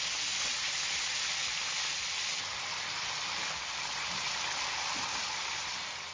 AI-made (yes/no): no